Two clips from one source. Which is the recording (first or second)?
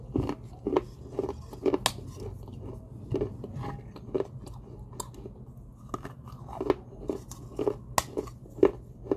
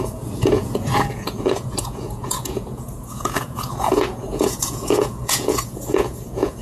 first